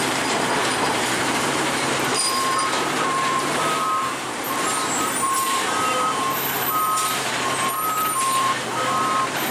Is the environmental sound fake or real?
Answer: fake